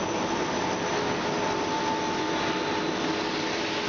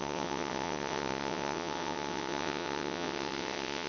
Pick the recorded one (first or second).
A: first